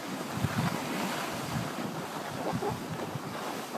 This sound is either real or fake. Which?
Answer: real